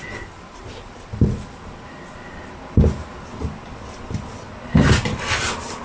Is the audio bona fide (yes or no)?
yes